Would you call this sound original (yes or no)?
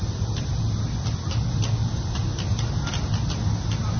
yes